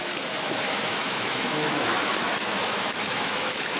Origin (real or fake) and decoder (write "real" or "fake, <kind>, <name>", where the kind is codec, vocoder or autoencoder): fake, autoencoder, DAC-VAE